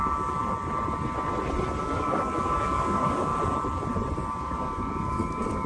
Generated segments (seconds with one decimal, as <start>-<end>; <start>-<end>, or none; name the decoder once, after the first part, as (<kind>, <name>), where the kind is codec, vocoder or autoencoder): 0.0-0.4 (codec, DAC); 1.8-3.3; 4.3-5.7